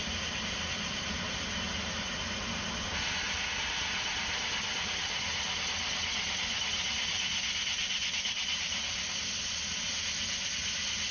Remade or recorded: recorded